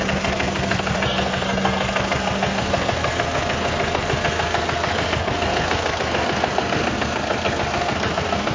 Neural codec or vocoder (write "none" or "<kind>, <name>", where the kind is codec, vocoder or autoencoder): codec, SNAC